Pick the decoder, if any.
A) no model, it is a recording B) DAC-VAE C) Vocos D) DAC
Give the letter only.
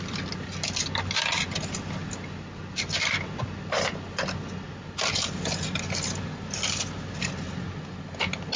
A